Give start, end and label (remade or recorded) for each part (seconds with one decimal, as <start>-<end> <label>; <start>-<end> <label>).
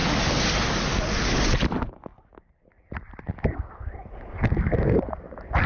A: 0.0-1.0 remade; 1.0-5.7 recorded